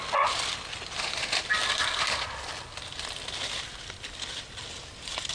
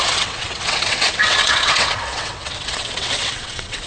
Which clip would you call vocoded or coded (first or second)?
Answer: second